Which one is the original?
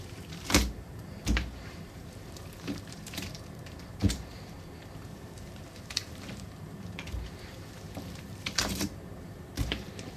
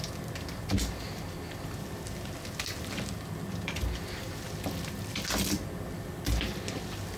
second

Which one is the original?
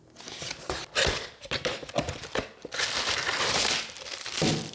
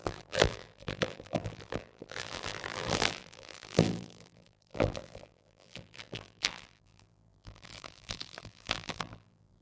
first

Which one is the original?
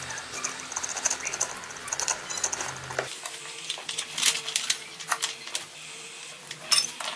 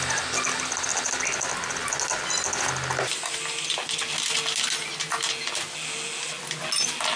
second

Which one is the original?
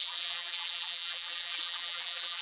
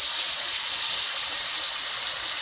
second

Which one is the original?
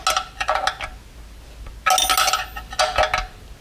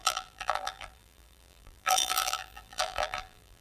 first